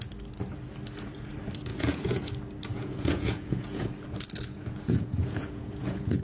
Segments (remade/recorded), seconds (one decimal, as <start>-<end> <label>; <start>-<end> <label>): 0.0-1.7 recorded; 1.7-2.3 remade; 2.3-2.7 recorded; 2.7-3.9 remade; 3.9-4.5 recorded; 4.5-6.2 remade